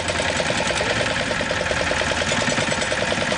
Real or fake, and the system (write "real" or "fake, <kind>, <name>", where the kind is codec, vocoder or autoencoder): real